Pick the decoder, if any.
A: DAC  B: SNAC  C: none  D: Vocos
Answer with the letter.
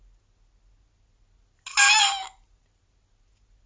C